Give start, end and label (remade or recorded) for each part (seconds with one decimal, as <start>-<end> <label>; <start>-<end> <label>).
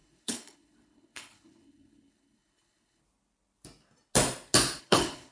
0.0-3.0 remade; 3.0-4.8 recorded; 4.8-5.3 remade